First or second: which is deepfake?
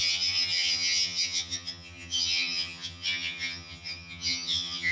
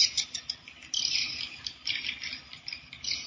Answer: first